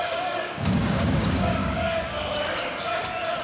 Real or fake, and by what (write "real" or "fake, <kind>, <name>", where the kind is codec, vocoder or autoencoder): fake, codec, DAC